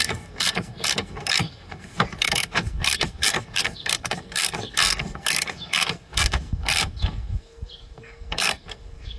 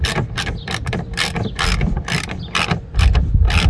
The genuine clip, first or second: second